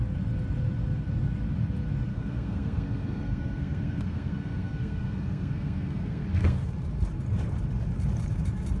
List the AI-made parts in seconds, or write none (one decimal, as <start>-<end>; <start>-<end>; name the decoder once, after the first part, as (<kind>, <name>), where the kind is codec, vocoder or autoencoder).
2.1-6.7 (codec, SNAC)